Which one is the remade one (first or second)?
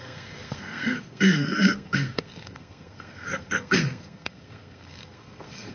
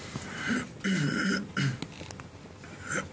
first